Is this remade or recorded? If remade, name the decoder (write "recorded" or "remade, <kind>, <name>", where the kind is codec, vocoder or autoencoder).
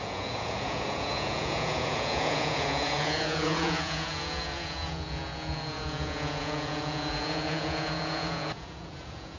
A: remade, vocoder, Vocos